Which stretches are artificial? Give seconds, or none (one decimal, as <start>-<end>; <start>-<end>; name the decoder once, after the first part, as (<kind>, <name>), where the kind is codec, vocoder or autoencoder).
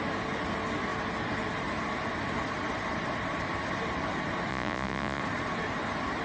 4.5-5.2 (vocoder, Vocos)